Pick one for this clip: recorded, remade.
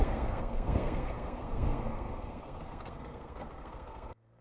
remade